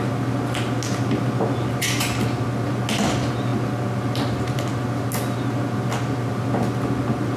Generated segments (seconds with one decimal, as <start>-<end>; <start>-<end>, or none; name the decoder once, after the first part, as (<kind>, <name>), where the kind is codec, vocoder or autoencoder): none